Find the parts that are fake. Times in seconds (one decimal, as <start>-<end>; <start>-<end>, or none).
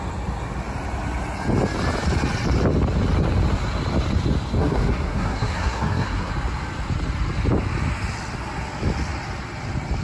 4.6-6.3